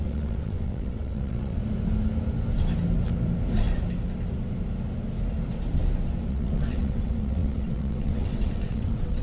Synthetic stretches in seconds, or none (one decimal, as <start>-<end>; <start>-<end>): 0.0-1.6; 6.3-9.2